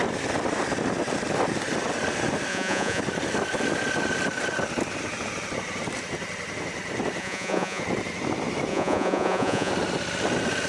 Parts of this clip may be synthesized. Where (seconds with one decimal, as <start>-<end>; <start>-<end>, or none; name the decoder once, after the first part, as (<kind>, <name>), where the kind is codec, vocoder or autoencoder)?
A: 2.5-3.0 (vocoder, Vocos); 7.2-7.8; 8.7-9.7